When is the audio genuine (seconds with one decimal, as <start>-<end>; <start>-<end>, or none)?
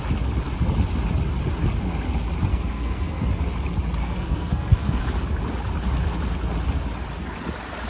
0.0-2.5; 3.3-4.0; 5.0-7.9